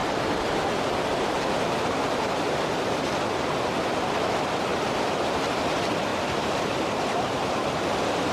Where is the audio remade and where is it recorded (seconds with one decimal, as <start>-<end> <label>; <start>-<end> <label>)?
0.0-3.0 remade; 3.0-4.7 recorded; 4.7-5.6 remade; 5.6-6.1 recorded; 6.1-7.4 remade; 7.4-8.3 recorded